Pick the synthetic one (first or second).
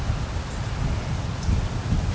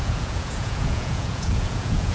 second